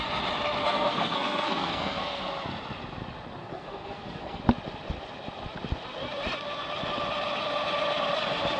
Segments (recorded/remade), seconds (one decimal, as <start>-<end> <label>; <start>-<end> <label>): 0.0-0.6 recorded; 0.6-2.2 remade; 2.2-3.4 recorded; 3.4-4.4 remade; 4.4-8.6 recorded